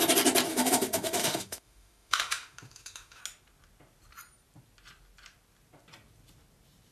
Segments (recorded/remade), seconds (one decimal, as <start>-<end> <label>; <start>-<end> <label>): 0.0-0.5 recorded; 0.5-3.2 remade; 3.2-6.9 recorded